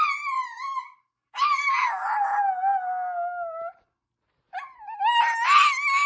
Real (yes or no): yes